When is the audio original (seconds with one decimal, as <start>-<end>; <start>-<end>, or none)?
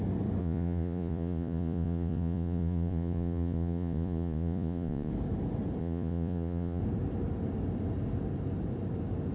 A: 0.0-0.4; 5.1-5.8; 6.8-9.3